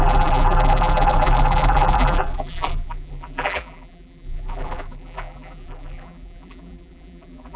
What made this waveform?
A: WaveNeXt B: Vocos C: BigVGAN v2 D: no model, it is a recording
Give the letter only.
C